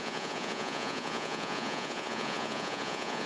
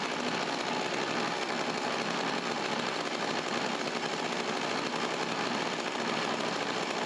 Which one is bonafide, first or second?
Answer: second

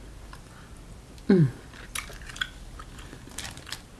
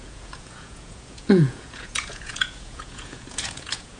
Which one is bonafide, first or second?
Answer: first